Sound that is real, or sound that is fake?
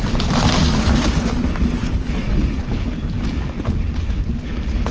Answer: real